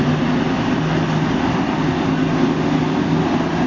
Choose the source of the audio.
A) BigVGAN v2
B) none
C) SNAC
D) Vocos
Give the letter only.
B